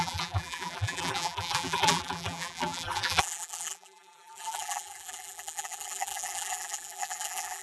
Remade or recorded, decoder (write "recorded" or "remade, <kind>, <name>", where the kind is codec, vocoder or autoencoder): remade, vocoder, BigVGAN v2